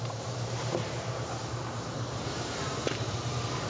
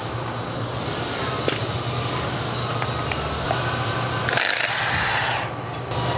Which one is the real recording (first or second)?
second